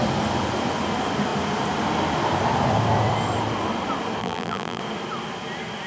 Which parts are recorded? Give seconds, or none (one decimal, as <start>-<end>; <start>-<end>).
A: 0.0-4.2; 4.8-5.9